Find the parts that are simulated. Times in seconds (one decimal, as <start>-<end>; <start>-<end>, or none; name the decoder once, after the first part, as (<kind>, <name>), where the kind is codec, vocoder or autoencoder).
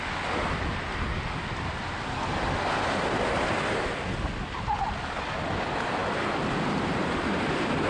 none